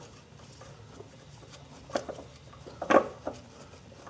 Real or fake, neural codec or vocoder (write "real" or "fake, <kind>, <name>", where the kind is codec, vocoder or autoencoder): real